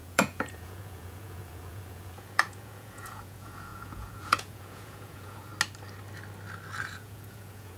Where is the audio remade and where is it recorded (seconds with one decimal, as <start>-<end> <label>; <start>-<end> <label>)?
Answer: 0.0-5.5 remade; 5.5-6.8 recorded; 6.8-7.8 remade